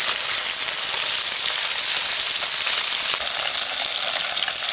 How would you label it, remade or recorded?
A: recorded